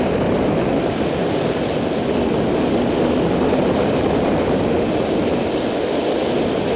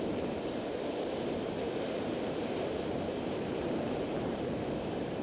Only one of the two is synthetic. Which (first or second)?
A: second